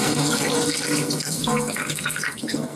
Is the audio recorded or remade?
remade